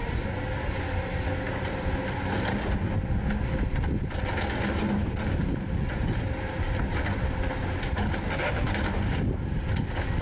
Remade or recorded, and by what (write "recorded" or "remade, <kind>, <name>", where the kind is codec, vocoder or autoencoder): recorded